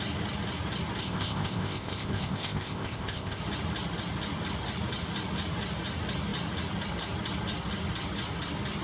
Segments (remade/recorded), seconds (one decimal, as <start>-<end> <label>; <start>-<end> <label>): 0.0-1.0 recorded; 1.0-3.4 remade; 3.4-8.8 recorded